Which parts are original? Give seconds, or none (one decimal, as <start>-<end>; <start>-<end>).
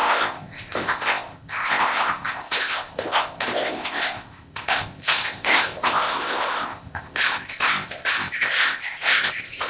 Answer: none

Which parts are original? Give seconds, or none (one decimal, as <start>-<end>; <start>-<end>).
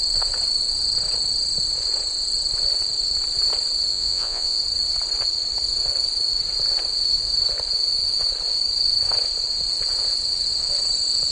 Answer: 0.0-3.9; 4.6-11.3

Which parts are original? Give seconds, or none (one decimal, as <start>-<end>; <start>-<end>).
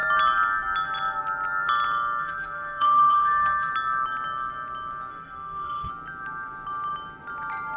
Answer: 0.0-2.2; 3.7-5.1; 5.9-7.8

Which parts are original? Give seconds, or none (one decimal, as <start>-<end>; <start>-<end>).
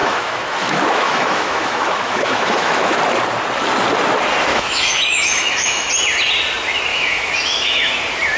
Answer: 3.0-4.5; 5.9-6.9; 7.9-8.4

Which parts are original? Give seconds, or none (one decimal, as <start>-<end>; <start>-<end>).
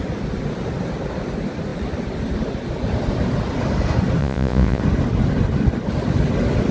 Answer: 0.0-4.2; 4.8-6.7